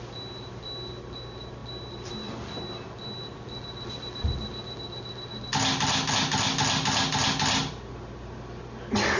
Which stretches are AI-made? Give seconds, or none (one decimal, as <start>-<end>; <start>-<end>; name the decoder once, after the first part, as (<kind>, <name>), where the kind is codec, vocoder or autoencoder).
none